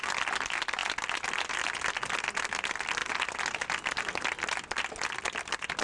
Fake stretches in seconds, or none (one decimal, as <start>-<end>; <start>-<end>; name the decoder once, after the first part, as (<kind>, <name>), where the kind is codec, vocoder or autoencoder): none

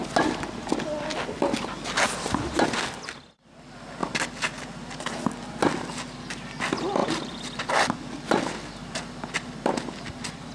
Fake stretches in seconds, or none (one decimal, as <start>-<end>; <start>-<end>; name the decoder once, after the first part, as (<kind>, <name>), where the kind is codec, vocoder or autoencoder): none